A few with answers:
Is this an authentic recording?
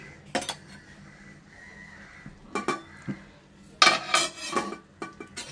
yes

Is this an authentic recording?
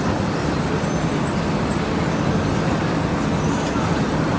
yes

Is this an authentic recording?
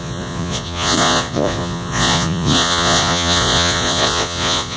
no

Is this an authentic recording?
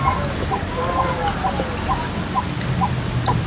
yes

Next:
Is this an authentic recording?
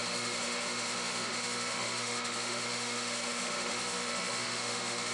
no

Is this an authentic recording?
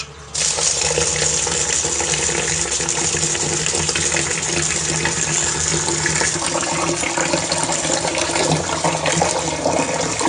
yes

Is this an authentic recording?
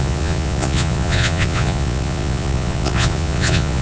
no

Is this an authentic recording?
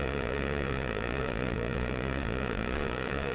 no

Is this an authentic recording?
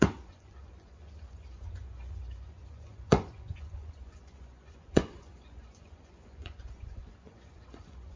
no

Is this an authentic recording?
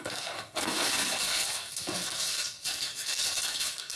no